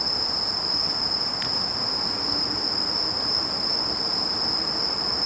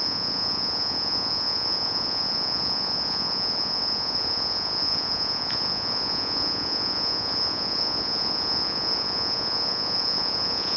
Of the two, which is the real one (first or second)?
first